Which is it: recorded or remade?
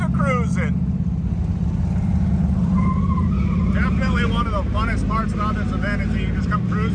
recorded